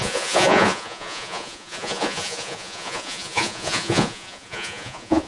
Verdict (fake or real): fake